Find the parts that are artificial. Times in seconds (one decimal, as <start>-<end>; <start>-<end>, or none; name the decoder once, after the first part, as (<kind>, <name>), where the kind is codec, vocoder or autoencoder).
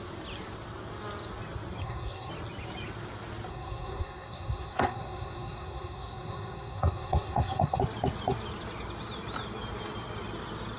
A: 1.8-2.3 (codec, SNAC); 3.5-7.8